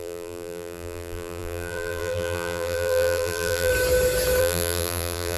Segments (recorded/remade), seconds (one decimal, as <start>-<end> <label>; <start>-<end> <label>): 0.0-3.7 remade; 3.7-4.4 recorded; 4.4-5.4 remade